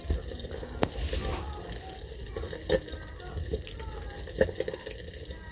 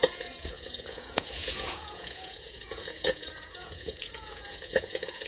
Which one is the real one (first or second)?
first